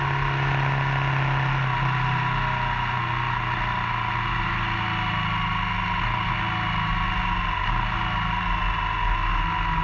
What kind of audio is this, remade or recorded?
recorded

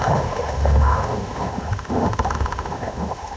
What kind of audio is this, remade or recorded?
remade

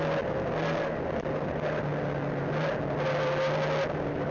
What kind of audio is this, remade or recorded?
recorded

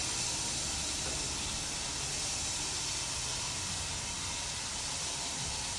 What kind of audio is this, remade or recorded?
recorded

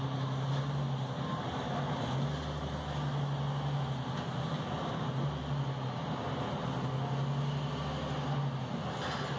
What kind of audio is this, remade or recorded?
recorded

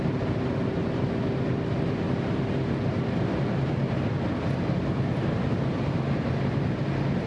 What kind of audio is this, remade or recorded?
recorded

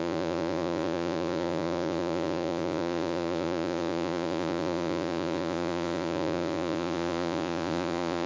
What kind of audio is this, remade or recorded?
remade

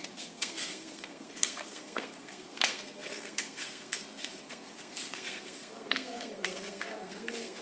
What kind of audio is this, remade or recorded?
remade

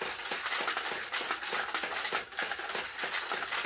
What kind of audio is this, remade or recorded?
recorded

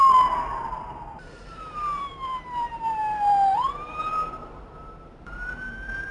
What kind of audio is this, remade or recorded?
remade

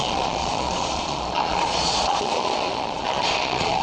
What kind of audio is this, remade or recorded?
remade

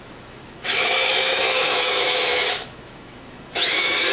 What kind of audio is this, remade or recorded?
remade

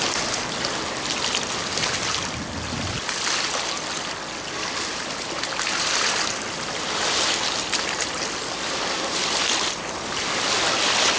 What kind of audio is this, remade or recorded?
recorded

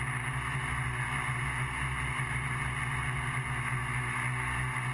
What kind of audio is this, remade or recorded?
recorded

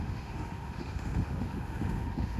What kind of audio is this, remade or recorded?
remade